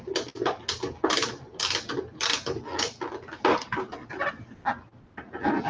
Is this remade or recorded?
recorded